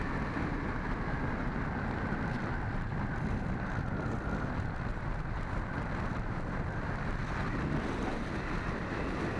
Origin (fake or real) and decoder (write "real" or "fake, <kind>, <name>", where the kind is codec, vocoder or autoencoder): real